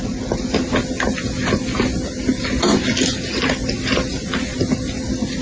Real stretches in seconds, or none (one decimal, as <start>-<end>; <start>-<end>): 0.0-5.4